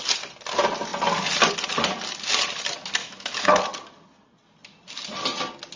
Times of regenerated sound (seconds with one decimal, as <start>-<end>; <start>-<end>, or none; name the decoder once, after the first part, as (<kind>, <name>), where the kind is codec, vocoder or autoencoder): 3.0-3.6 (autoencoder, DAC-VAE)